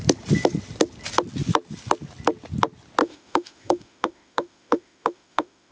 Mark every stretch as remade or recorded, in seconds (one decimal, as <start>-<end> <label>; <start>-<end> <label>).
0.0-3.0 recorded; 3.0-5.7 remade